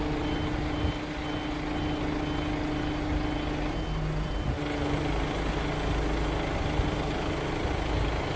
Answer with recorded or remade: recorded